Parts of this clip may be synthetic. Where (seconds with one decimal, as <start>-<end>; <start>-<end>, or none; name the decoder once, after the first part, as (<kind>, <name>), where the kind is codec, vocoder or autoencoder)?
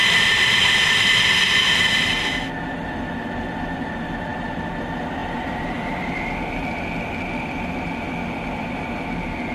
0.0-0.5 (vocoder, BigVGAN v2); 5.2-6.3